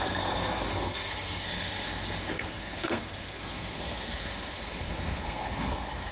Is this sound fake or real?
fake